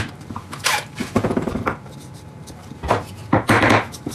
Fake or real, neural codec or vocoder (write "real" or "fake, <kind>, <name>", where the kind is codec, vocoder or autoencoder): fake, vocoder, BigVGAN v2